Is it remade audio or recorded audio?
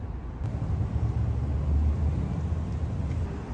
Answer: recorded